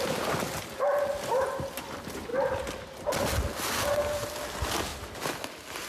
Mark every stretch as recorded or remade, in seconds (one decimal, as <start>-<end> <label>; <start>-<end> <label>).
0.0-5.9 recorded